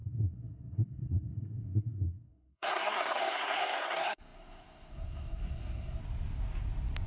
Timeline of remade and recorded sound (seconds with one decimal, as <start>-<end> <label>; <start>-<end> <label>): 0.0-6.0 remade; 6.0-7.1 recorded

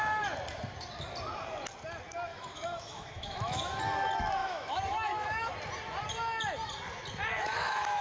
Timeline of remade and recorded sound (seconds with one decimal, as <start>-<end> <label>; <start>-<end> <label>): 0.0-2.3 recorded; 2.3-3.8 remade; 3.8-4.4 recorded; 4.4-5.5 remade; 5.5-7.3 recorded; 7.3-8.0 remade

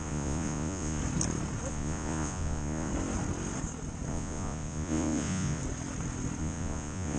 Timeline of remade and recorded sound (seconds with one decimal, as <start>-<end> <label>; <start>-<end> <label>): 0.0-1.0 remade; 1.0-1.7 recorded; 1.7-2.9 remade; 2.9-4.1 recorded; 4.1-5.6 remade; 5.6-6.4 recorded; 6.4-7.2 remade

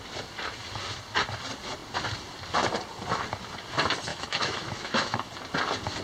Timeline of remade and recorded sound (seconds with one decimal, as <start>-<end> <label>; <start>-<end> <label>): 0.0-4.1 recorded; 4.1-5.3 remade; 5.3-6.0 recorded

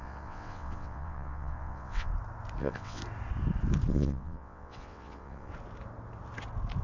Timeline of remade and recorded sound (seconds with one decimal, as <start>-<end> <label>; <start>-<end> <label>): 0.0-2.1 remade; 2.1-2.6 recorded; 2.6-3.0 remade; 3.0-3.9 recorded; 3.9-5.5 remade; 5.5-6.8 recorded